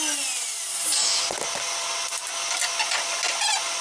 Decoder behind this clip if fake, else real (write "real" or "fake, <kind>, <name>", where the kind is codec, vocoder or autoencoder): real